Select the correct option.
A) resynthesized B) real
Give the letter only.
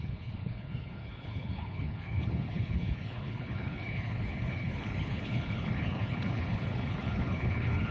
A